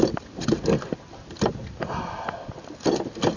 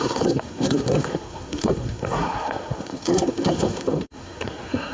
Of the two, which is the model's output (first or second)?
second